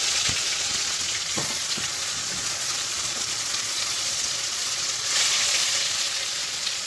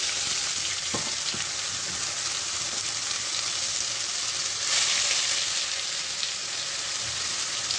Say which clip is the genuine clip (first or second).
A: second